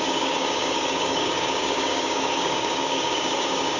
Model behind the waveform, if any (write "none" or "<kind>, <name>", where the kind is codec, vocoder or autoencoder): codec, DAC